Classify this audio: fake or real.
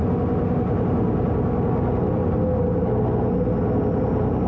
real